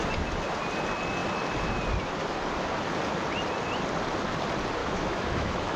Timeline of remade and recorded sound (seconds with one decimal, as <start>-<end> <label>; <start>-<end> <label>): 0.0-4.8 recorded; 4.8-5.8 remade